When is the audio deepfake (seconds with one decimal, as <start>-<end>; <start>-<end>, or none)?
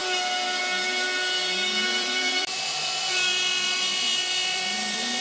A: 1.9-5.2